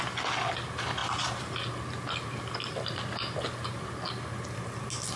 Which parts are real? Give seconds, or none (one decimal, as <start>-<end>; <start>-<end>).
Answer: 0.0-5.2